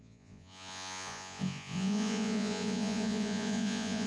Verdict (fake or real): fake